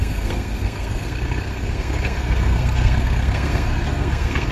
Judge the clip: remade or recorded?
remade